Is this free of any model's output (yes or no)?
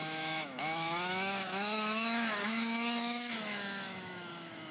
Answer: no